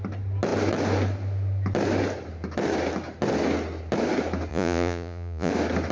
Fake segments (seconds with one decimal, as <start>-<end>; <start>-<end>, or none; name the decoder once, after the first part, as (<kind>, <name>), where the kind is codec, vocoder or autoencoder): 4.5-5.5 (vocoder, Vocos)